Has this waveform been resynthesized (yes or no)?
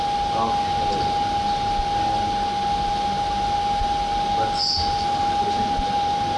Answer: no